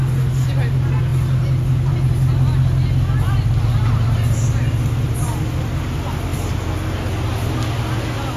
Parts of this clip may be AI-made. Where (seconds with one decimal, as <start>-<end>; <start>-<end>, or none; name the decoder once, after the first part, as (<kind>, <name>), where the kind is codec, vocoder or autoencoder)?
none